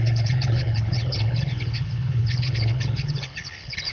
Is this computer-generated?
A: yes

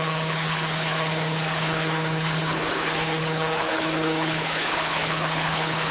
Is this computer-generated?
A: yes